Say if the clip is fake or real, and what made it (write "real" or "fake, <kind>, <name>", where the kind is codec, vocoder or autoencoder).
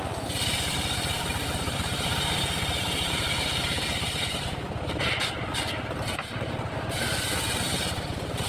fake, vocoder, BigVGAN v2